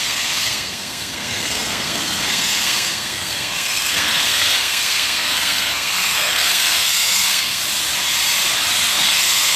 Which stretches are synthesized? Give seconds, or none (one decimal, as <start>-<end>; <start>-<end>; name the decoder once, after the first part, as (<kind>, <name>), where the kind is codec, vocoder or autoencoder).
0.0-7.6 (codec, SNAC); 8.9-9.6